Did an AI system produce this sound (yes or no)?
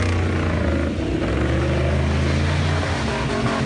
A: no